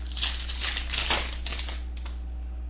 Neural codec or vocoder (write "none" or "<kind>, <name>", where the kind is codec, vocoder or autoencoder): none